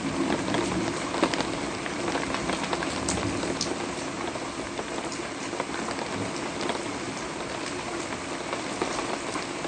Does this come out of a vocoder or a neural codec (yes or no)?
no